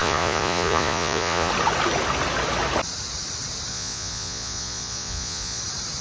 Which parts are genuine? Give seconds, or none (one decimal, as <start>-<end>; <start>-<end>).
1.5-3.7; 5.6-6.0